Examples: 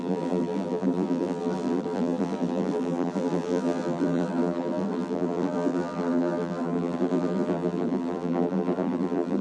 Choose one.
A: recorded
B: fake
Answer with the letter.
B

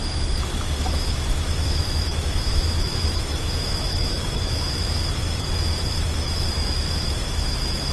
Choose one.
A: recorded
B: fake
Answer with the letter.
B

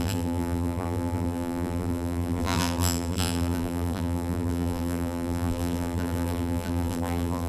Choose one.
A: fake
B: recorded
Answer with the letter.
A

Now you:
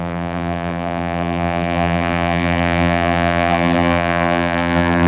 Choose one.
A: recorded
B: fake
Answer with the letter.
B